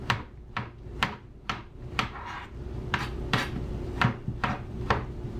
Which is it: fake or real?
fake